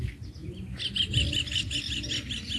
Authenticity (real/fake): real